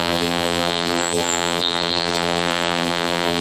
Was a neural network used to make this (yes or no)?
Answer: yes